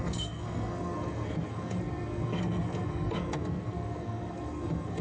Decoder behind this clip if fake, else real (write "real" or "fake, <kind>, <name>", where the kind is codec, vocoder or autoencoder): fake, codec, SNAC